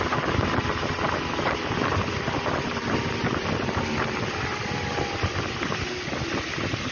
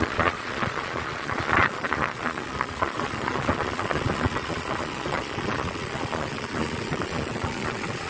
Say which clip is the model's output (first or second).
second